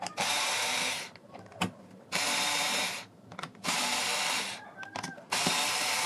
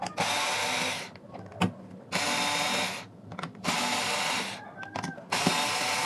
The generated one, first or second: first